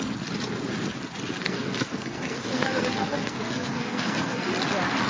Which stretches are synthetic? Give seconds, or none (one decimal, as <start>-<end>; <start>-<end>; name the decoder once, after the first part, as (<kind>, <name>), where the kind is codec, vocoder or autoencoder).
1.4-4.5 (codec, SNAC)